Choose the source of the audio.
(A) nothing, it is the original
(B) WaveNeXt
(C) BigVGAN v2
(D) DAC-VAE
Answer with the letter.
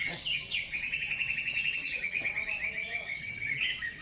B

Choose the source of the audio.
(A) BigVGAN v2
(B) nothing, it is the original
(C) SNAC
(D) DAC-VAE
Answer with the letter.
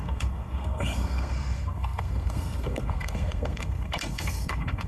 C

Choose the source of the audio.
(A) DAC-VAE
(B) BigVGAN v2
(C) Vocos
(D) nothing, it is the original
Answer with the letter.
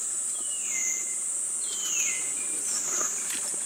D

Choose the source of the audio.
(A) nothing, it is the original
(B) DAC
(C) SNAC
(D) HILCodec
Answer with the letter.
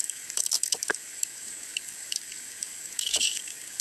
B